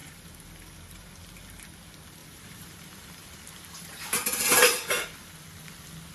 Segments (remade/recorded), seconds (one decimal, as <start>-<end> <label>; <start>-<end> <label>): 0.0-1.1 remade; 1.1-2.2 recorded; 2.2-5.3 remade; 5.3-6.1 recorded